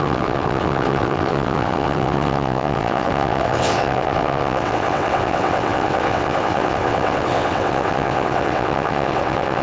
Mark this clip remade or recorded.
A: remade